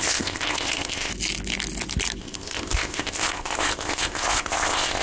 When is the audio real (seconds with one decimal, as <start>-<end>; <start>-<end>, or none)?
1.1-2.2